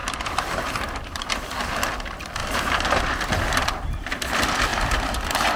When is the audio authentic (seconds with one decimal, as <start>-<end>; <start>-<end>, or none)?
1.3-2.4; 3.0-4.7